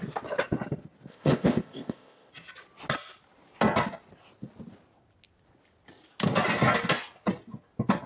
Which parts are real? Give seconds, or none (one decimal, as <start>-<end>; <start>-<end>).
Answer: 0.0-1.1; 2.3-8.1